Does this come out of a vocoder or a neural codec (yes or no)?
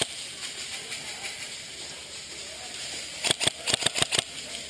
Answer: yes